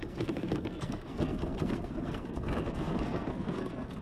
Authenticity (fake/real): fake